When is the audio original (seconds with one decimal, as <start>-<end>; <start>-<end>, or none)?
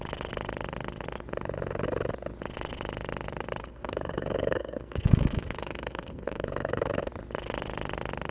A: 0.0-3.6; 7.1-8.3